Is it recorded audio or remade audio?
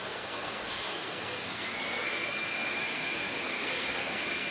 remade